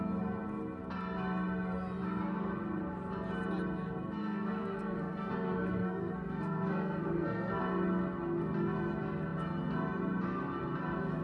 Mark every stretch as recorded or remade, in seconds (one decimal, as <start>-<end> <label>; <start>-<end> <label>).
0.0-4.2 recorded; 4.2-7.6 remade; 7.6-11.2 recorded